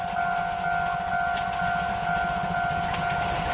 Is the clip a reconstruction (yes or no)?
no